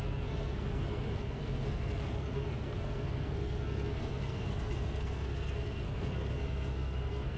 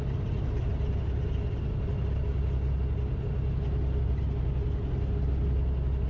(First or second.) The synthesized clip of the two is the first